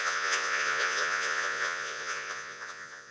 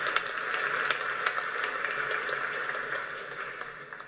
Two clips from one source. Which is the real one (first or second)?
second